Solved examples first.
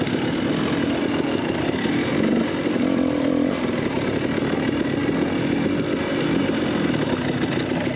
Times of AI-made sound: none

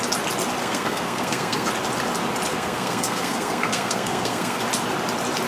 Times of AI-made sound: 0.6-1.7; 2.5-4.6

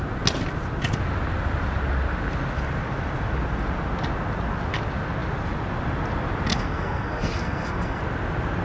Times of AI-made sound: 6.5-8.0